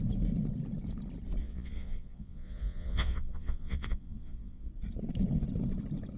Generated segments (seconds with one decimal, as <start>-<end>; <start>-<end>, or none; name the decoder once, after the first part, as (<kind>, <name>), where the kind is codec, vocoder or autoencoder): 1.4-4.7 (vocoder, Vocos)